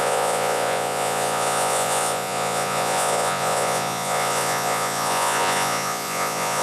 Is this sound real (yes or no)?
no